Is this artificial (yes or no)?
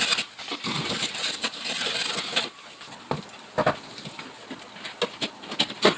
no